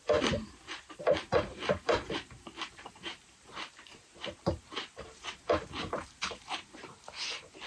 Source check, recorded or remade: remade